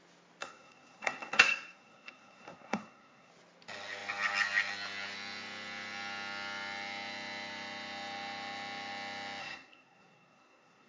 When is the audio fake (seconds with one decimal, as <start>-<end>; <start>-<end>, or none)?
0.4-3.3; 9.4-10.9